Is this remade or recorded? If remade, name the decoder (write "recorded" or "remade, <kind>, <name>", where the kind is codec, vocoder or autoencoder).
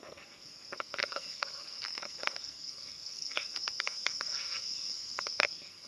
remade, codec, SNAC